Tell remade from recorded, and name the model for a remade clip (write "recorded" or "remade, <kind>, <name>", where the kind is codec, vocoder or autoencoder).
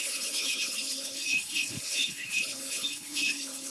remade, codec, HILCodec